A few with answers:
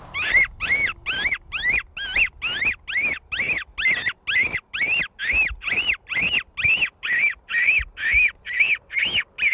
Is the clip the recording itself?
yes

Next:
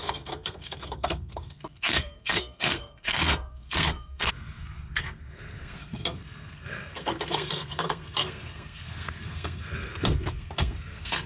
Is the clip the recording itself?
no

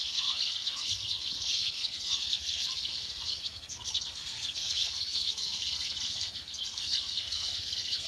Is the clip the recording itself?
no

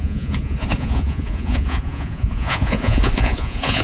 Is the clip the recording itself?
no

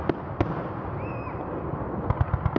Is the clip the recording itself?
yes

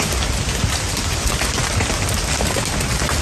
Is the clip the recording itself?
yes